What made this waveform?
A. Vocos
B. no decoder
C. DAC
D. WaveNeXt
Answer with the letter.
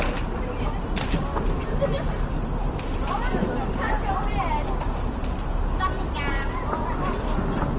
B